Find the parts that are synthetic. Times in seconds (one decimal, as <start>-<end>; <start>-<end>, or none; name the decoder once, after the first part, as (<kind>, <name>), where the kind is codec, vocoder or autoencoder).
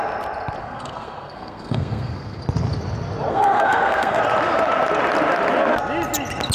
0.6-2.4 (codec, SNAC); 3.3-4.2